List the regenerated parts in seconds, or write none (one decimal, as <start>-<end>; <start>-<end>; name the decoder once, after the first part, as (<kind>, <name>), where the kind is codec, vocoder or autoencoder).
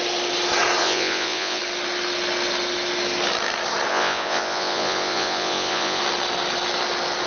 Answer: 0.8-1.6 (vocoder, Vocos); 3.9-6.0